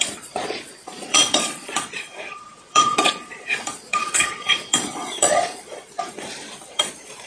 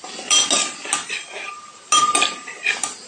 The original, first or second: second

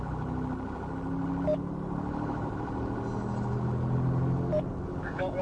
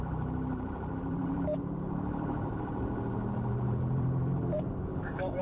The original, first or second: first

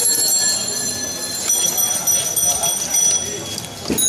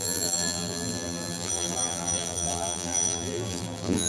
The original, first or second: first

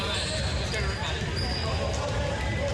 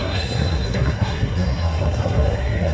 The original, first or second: first